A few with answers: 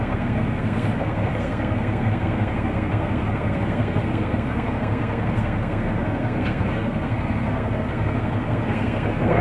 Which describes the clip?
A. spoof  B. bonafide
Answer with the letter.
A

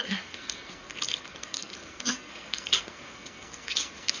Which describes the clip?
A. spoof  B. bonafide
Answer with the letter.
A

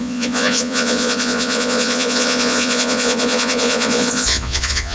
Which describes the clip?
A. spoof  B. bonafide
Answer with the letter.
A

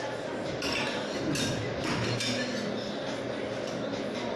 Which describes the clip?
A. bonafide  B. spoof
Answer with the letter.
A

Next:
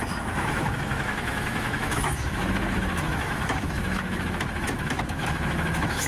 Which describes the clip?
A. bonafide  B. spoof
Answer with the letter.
B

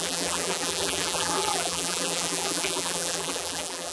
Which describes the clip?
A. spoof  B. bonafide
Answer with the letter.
A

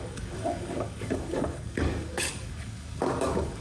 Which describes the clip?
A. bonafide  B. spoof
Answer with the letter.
B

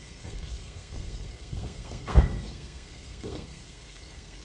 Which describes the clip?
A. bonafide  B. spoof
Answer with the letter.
B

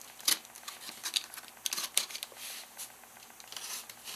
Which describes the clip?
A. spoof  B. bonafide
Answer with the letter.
B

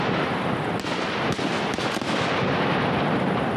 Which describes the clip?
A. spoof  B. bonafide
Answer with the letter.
B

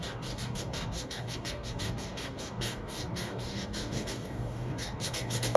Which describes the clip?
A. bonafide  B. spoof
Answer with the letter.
B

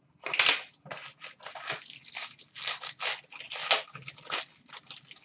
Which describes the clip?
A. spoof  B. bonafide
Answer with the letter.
B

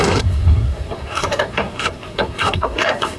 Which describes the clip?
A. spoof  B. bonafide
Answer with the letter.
A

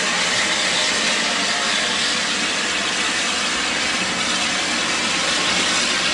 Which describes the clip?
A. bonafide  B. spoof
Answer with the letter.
A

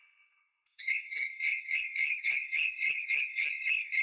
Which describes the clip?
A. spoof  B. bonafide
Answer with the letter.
A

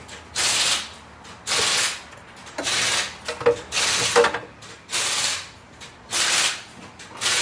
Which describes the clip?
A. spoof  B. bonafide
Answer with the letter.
B